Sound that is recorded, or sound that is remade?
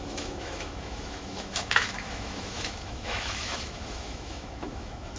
remade